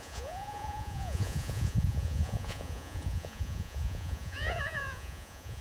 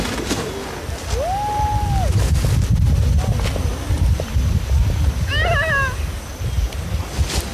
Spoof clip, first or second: first